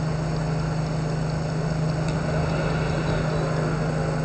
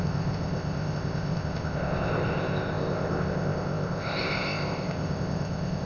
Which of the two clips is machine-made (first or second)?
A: second